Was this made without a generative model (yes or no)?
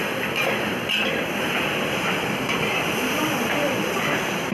yes